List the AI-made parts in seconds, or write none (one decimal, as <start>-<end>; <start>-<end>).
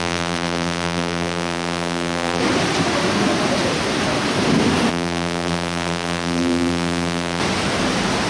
0.0-2.4; 4.9-7.4